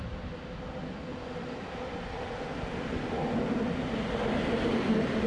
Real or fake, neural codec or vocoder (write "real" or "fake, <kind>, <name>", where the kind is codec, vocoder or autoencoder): real